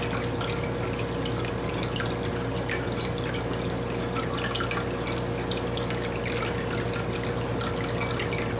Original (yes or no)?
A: yes